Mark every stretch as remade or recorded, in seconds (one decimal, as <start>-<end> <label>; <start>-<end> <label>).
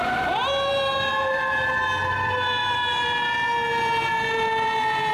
0.0-5.1 remade